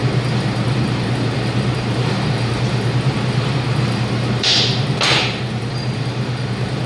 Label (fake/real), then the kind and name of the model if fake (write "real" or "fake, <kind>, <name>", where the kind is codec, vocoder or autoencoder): fake, vocoder, BigVGAN v2